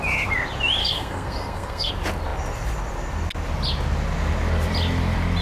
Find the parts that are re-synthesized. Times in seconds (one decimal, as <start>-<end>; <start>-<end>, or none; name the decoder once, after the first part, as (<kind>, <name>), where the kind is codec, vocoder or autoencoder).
0.8-1.9 (codec, SNAC)